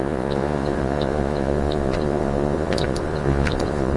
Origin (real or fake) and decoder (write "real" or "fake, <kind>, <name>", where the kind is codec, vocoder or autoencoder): fake, vocoder, Vocos